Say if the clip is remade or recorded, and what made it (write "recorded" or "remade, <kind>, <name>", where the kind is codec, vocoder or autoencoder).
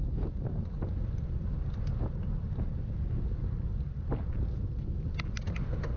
recorded